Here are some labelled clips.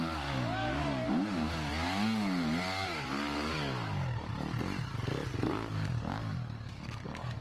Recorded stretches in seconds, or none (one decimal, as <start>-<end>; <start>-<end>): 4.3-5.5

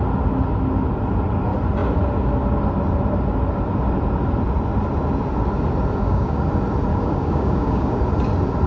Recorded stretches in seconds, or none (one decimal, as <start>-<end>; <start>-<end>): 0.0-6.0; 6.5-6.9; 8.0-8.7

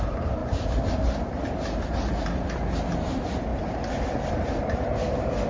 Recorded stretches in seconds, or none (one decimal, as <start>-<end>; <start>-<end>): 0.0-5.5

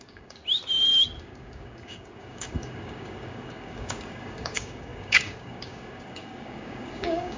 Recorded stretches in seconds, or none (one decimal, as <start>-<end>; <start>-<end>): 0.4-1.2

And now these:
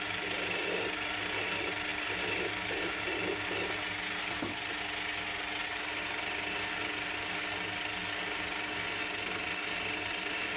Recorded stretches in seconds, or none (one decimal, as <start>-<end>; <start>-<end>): 0.0-10.6